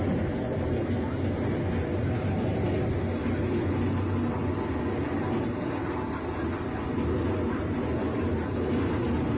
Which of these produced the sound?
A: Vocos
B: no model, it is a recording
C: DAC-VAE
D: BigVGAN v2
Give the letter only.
B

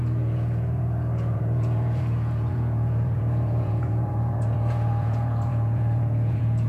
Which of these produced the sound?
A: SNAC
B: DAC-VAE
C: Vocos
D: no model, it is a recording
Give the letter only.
C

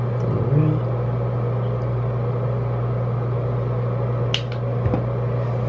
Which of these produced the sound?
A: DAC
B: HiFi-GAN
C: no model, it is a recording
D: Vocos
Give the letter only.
C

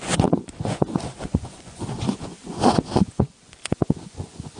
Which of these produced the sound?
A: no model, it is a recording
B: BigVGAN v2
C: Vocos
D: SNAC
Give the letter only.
C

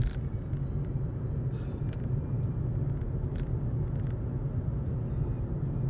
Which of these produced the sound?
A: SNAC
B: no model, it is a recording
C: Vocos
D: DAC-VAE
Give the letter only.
B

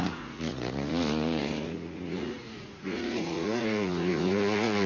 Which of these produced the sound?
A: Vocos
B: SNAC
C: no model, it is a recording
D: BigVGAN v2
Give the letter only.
A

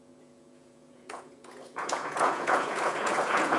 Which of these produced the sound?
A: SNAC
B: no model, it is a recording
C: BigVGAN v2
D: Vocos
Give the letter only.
D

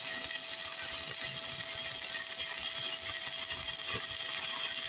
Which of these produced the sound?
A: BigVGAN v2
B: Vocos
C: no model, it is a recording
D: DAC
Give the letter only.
C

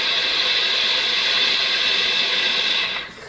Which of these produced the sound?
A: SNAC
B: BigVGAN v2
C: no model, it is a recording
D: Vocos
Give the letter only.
D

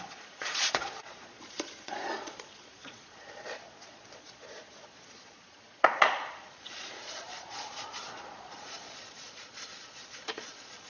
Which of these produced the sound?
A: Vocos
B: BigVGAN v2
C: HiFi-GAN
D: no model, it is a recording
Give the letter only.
A